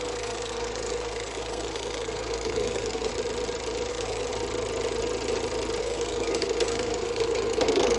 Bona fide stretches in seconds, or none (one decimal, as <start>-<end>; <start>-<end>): 3.1-3.9; 4.3-5.8